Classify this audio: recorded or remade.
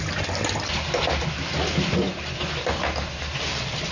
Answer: recorded